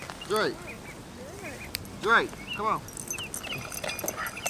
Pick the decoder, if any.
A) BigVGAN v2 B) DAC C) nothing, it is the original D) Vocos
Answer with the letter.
C